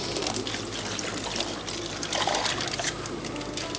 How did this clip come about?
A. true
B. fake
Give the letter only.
A